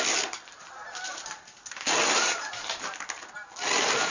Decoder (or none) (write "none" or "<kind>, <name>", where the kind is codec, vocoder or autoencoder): none